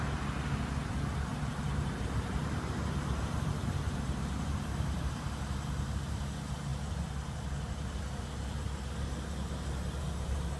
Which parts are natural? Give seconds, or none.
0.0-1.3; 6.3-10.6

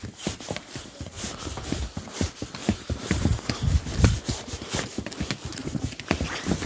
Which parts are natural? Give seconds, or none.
0.0-2.6; 3.5-6.7

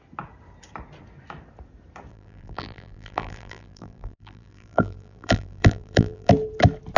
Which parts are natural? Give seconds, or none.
0.0-2.1; 6.3-7.0

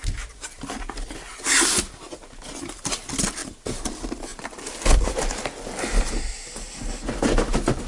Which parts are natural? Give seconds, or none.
0.0-3.4; 3.9-4.3; 6.0-7.9

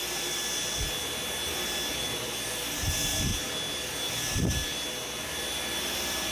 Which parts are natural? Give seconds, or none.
0.0-1.9; 3.3-4.1; 4.6-5.7

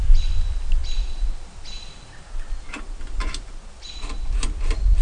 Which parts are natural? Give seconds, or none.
0.0-5.0

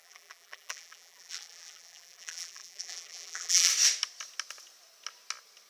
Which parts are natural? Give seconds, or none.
3.7-5.7